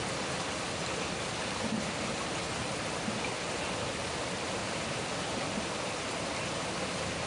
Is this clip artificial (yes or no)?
no